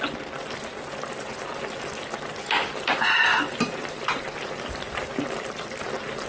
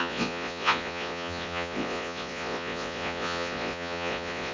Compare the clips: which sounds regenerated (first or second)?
second